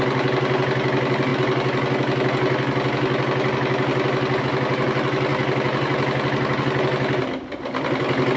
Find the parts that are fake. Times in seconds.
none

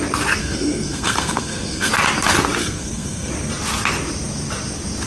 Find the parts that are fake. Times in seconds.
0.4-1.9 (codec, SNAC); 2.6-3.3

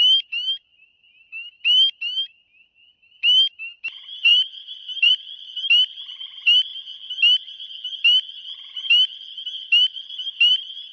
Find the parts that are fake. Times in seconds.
4.3-5.1 (vocoder, BigVGAN v2)

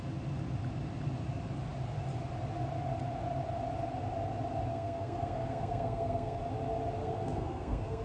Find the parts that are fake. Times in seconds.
4.7-6.4 (codec, SNAC); 7.0-8.0

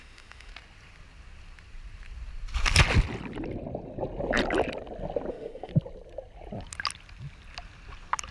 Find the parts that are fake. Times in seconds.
0.0-0.5 (autoencoder, DAC-VAE); 5.3-5.7

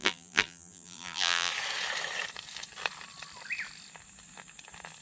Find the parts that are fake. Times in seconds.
0.0-1.5 (vocoder, BigVGAN v2)